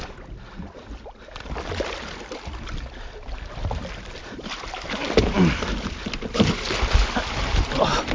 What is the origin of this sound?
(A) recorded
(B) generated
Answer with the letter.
A